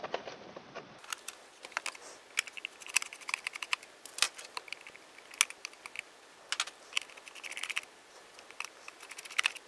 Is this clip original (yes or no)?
yes